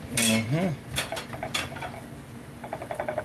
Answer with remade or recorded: recorded